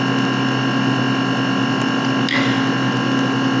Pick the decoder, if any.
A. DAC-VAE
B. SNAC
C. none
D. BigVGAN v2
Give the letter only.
C